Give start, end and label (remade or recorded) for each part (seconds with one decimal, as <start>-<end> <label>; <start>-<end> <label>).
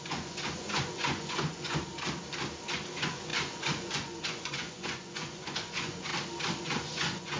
0.0-1.9 remade; 1.9-2.9 recorded; 2.9-6.1 remade; 6.1-6.6 recorded; 6.6-7.4 remade